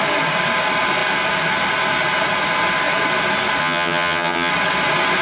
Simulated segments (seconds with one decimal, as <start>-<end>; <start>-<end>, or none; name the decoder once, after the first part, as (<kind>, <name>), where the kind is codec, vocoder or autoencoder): 3.6-4.5 (vocoder, HiFi-GAN)